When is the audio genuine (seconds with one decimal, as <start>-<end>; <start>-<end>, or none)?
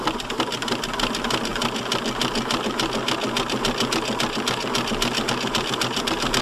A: 1.5-5.3